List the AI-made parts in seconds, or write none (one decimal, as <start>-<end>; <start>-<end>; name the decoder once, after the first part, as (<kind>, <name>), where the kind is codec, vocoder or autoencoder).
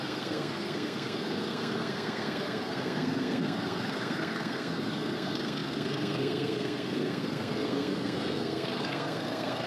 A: 0.0-9.7 (codec, SNAC)